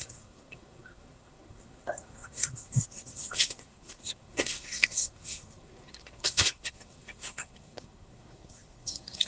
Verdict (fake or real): fake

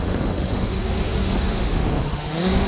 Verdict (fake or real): fake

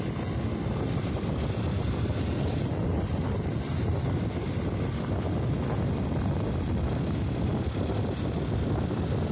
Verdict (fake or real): real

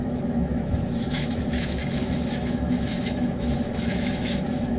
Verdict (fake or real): fake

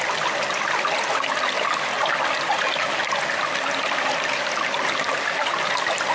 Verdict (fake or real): real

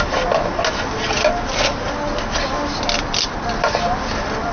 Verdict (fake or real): real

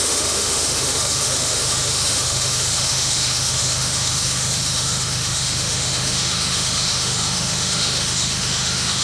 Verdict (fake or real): fake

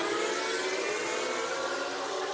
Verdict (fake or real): real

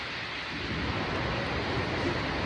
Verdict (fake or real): real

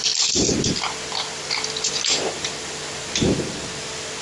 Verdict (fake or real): real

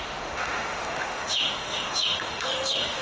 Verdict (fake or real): fake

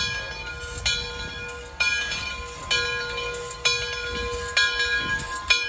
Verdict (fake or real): real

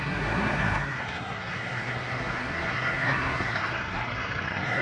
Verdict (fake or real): fake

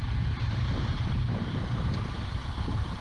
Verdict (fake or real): fake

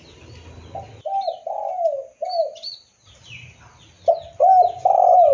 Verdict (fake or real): real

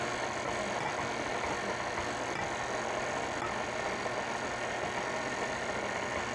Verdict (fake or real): real